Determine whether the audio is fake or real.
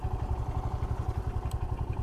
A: real